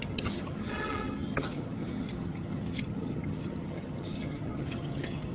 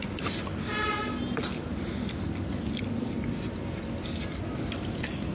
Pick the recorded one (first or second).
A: second